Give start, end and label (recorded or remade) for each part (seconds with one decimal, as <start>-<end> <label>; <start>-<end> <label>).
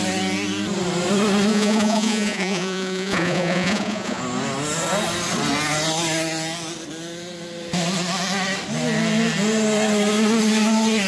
0.0-1.5 recorded; 1.5-4.2 remade; 4.2-11.1 recorded